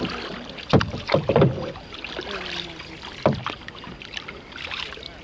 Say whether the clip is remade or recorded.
recorded